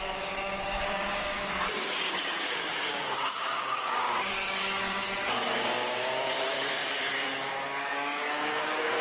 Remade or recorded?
remade